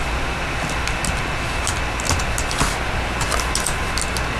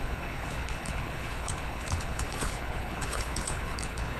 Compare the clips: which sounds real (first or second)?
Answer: first